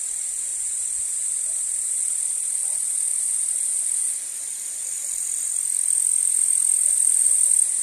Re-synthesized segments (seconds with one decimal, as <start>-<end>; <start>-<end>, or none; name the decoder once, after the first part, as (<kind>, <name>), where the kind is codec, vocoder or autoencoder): 0.5-2.0 (vocoder, BigVGAN v2)